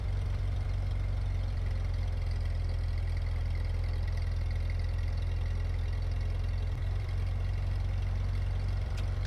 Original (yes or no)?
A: no